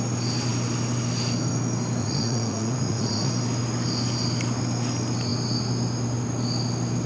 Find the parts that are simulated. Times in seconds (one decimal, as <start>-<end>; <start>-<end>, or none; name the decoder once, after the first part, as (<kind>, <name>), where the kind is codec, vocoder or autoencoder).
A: 2.0-3.3 (vocoder, Vocos)